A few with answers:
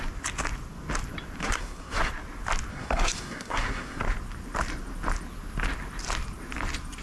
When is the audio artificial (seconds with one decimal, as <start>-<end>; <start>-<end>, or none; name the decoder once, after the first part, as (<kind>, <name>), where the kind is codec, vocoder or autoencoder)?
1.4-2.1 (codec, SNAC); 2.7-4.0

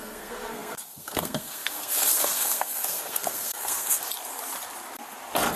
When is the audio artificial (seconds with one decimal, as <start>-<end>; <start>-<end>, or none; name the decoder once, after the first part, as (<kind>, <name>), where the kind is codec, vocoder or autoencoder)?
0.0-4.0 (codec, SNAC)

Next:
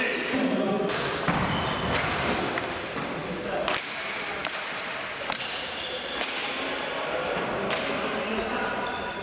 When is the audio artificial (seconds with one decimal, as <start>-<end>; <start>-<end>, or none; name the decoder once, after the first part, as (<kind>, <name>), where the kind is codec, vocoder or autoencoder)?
none